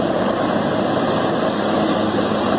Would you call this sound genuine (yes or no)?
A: yes